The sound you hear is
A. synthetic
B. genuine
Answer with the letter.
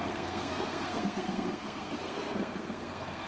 A